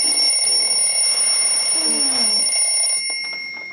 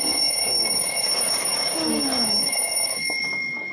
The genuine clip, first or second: first